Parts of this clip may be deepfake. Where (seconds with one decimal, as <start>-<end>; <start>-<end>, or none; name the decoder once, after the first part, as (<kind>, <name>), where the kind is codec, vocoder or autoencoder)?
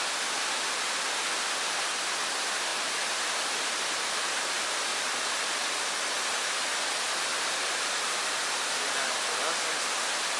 4.9-5.8 (vocoder, BigVGAN v2); 7.3-8.2